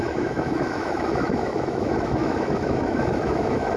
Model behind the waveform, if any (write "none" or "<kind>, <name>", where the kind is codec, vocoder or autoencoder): autoencoder, DAC-VAE